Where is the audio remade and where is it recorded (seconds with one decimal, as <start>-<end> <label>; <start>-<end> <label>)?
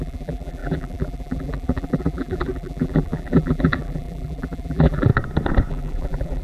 0.0-5.1 remade; 5.1-5.7 recorded; 5.7-6.4 remade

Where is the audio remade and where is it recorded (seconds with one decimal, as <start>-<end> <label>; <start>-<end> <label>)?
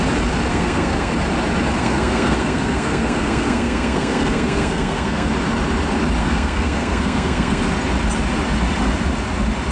0.0-0.5 recorded; 0.5-1.1 remade; 1.1-1.8 recorded; 1.8-5.3 remade; 5.3-6.2 recorded; 6.2-7.6 remade; 7.6-9.7 recorded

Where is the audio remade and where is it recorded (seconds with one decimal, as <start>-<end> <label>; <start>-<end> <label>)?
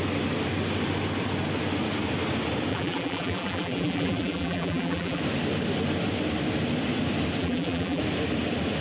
0.0-2.7 recorded; 2.7-5.2 remade; 5.2-7.4 recorded; 7.4-8.0 remade; 8.0-8.8 recorded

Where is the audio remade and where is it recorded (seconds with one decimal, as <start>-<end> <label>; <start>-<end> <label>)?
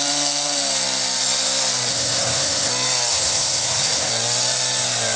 0.0-1.9 recorded; 1.9-2.7 remade; 2.7-3.1 recorded; 3.1-4.1 remade; 4.1-5.2 recorded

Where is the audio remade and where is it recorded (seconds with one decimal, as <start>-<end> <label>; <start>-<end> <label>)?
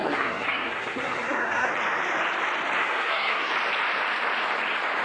0.0-1.7 remade; 1.7-2.8 recorded; 2.8-3.5 remade; 3.5-5.0 recorded